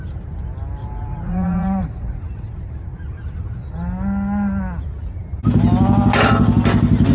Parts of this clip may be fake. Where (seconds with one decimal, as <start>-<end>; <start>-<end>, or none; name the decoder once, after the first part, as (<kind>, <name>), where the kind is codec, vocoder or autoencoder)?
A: 0.8-2.3 (vocoder, Vocos)